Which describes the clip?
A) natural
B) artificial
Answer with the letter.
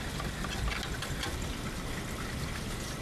A